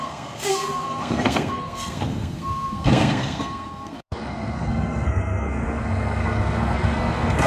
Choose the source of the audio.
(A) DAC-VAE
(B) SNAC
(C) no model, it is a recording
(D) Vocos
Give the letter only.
B